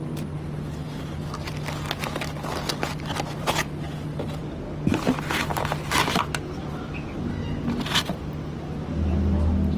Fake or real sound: real